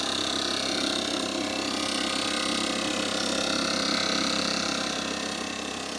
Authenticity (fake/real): real